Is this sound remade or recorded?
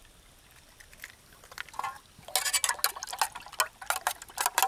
recorded